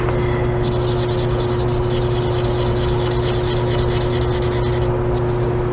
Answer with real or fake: real